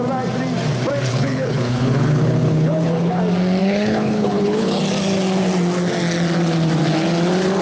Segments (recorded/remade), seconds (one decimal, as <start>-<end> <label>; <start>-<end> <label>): 0.0-1.1 recorded; 1.1-3.2 remade; 3.2-3.6 recorded; 3.6-4.8 remade; 4.8-7.6 recorded